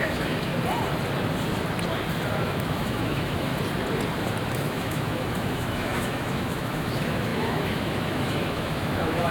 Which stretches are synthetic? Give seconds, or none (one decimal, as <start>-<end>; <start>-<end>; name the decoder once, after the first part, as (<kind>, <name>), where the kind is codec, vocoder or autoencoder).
0.0-0.5 (autoencoder, DAC-VAE); 2.3-3.5; 4.5-9.3